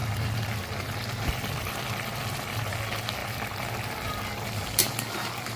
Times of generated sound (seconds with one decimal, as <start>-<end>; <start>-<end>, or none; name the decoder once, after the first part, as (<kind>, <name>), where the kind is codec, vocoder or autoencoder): 0.0-2.7 (vocoder, BigVGAN v2); 3.2-4.2